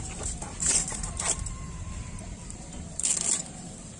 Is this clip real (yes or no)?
no